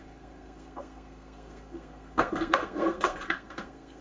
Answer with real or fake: fake